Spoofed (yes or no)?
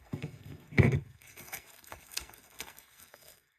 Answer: yes